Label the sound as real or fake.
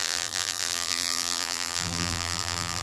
fake